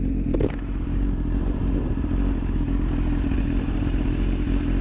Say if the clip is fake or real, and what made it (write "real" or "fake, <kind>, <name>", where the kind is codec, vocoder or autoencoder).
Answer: fake, vocoder, BigVGAN v2